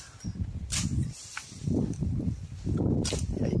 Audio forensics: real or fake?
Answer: real